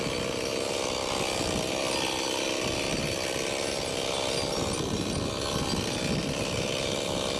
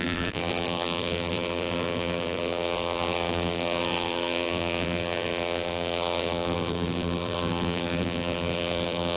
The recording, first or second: first